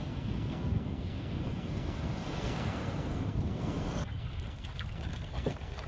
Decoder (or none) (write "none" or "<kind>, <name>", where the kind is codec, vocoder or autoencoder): codec, SNAC